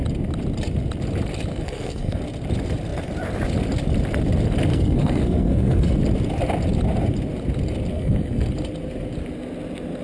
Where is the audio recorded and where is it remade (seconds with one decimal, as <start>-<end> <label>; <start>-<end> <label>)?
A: 0.0-1.5 recorded; 1.5-2.2 remade; 2.2-4.7 recorded; 4.7-6.0 remade; 6.0-7.9 recorded; 7.9-8.5 remade; 8.5-10.0 recorded